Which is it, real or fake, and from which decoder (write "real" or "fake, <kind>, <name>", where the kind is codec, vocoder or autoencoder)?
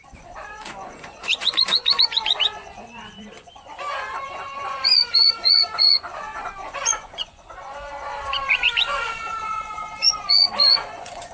fake, vocoder, Vocos